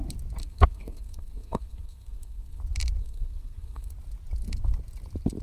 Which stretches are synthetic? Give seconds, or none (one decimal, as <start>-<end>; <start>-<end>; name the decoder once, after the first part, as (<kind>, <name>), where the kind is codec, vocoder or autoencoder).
0.4-2.6 (codec, SNAC); 3.0-3.9